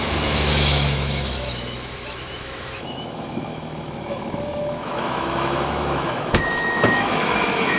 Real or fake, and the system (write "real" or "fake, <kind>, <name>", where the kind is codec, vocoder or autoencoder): fake, autoencoder, DAC-VAE